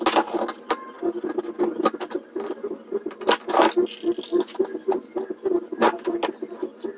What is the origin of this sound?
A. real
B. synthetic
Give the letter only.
A